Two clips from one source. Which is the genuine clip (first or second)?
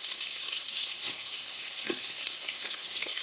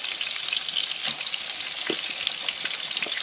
second